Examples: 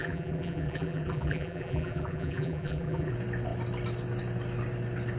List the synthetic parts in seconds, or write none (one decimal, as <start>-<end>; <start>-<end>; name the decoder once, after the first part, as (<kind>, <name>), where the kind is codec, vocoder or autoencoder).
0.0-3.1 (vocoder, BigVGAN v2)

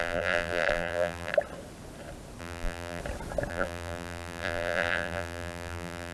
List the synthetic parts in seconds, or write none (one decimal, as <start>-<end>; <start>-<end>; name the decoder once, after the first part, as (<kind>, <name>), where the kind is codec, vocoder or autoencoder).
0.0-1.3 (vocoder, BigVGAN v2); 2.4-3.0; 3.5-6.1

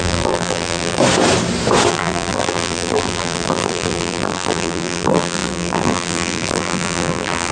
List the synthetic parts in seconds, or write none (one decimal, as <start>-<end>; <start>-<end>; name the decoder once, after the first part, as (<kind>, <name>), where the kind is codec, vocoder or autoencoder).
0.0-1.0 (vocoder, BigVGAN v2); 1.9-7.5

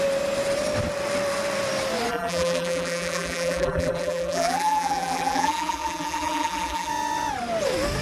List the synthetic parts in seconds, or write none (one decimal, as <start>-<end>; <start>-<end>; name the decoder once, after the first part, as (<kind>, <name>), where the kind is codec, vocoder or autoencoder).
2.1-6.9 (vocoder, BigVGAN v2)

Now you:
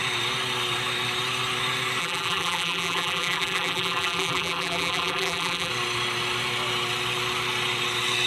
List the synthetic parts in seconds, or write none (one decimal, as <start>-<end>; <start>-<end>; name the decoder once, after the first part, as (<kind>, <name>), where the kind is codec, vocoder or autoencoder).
2.0-5.7 (vocoder, BigVGAN v2)

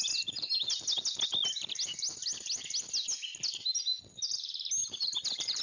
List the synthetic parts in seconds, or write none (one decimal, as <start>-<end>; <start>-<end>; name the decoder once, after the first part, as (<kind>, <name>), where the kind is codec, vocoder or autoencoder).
4.8-5.6 (vocoder, BigVGAN v2)

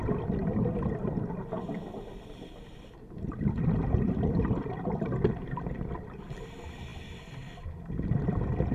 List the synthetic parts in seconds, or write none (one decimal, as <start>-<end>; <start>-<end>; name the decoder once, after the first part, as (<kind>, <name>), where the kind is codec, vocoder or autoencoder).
none